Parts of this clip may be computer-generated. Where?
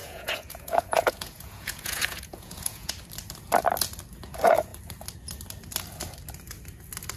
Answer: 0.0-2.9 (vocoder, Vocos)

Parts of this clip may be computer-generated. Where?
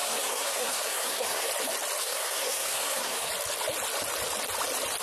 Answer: 0.0-1.5 (codec, SNAC); 2.0-3.3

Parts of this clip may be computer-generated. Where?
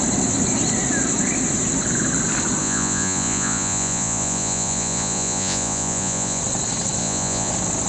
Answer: 2.6-6.4 (vocoder, Vocos); 7.0-7.5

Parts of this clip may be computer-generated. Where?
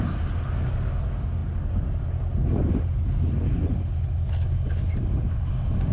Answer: none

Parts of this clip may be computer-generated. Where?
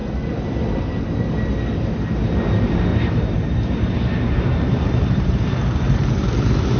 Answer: 2.9-6.8 (vocoder, BigVGAN v2)